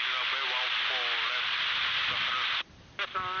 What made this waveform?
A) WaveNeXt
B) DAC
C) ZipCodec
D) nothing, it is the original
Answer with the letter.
D